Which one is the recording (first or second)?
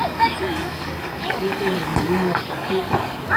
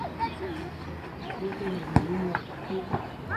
second